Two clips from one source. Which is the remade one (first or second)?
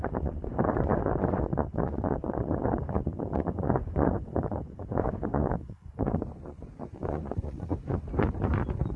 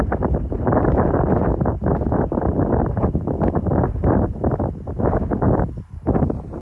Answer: first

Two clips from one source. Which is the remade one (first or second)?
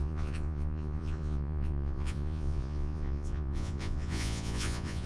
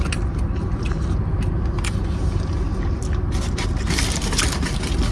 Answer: first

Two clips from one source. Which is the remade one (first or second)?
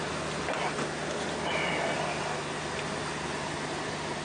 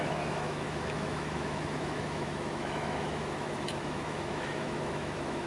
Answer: second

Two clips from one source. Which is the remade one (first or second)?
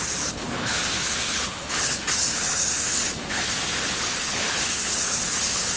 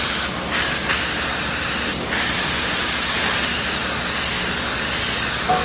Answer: first